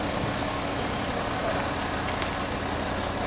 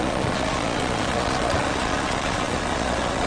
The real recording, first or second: first